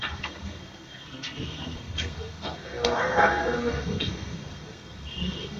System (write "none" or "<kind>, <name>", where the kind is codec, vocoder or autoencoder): codec, SNAC